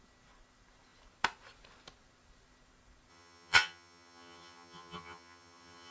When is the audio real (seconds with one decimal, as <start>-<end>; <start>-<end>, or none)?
0.0-3.1